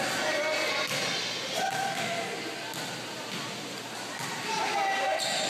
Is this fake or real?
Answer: real